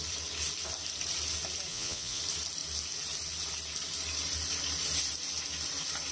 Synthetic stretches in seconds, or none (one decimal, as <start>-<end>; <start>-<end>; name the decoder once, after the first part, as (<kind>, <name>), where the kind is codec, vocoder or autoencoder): 1.7-2.2 (vocoder, Vocos)

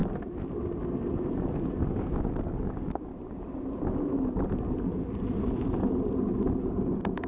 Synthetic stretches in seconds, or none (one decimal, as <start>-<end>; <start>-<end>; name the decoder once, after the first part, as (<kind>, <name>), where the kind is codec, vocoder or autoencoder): 1.8-3.1 (codec, DAC); 6.7-7.3

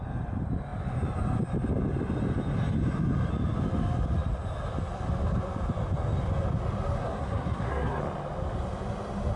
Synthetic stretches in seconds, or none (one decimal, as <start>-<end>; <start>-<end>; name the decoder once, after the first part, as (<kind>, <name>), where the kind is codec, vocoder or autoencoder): 7.0-8.0 (codec, SNAC)

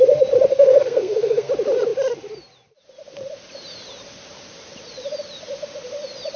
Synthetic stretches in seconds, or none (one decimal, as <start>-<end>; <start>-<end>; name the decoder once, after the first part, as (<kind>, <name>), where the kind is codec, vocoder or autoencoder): 0.5-1.5 (codec, SNAC)